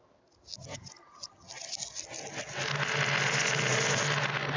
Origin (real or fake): real